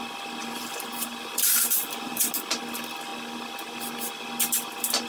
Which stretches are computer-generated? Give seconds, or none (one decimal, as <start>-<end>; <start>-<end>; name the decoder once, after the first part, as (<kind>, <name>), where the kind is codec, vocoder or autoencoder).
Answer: 0.4-2.3 (vocoder, BigVGAN v2)